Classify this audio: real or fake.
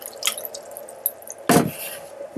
real